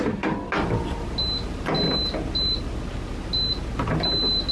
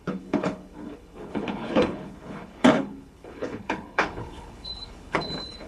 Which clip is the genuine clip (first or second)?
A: first